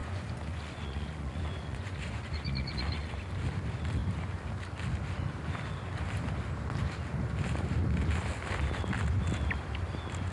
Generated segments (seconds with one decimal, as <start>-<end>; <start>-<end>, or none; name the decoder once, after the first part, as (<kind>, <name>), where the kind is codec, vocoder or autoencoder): 0.0-3.1 (vocoder, Vocos)